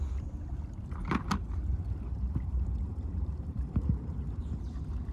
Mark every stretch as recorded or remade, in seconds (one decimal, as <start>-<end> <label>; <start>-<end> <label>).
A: 0.0-1.7 recorded; 1.7-4.6 remade; 4.6-5.1 recorded